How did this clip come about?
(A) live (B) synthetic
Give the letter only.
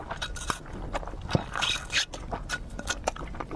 A